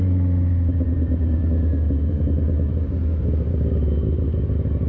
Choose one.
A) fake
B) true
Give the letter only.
B